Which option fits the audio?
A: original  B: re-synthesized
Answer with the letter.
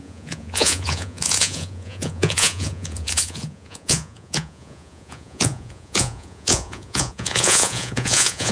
B